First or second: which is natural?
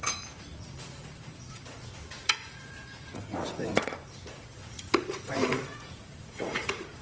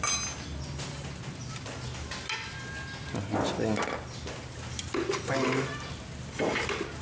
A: second